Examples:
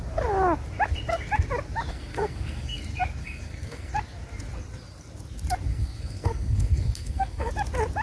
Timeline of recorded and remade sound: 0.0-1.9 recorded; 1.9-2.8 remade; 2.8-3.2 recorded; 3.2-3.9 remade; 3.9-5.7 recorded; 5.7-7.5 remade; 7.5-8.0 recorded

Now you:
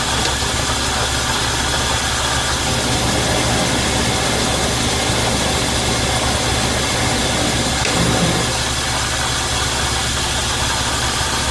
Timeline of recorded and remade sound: 0.0-11.5 recorded

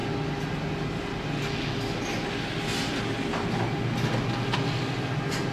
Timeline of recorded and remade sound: 0.0-5.5 recorded

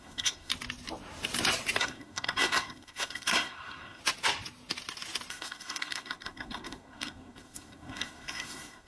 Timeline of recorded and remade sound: 0.0-0.5 remade; 0.5-1.8 recorded; 1.8-4.0 remade; 4.0-5.3 recorded; 5.3-8.9 remade

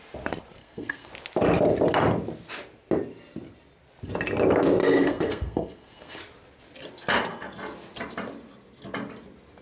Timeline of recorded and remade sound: 0.0-0.6 recorded; 0.6-1.1 remade; 1.1-4.8 recorded; 4.8-6.2 remade; 6.2-9.6 recorded